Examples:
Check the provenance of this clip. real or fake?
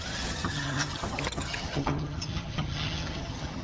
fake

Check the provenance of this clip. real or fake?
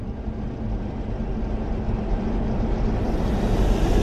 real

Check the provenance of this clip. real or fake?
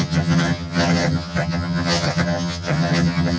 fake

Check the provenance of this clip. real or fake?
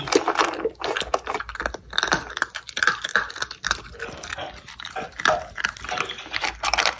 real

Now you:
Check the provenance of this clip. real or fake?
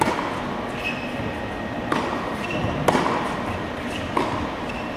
real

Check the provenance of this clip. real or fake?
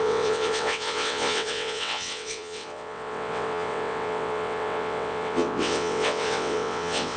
fake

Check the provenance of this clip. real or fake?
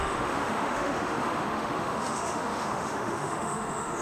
fake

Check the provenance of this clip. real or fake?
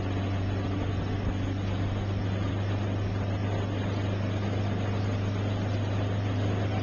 real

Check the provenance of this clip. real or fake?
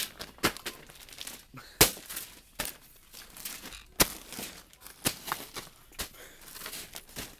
real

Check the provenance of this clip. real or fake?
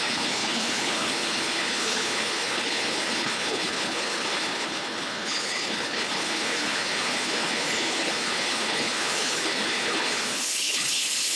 fake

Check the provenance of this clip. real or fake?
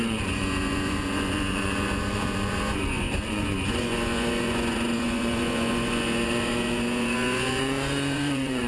fake